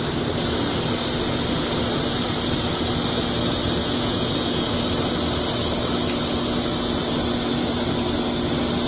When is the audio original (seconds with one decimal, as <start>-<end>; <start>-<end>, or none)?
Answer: 0.0-3.8; 4.8-8.9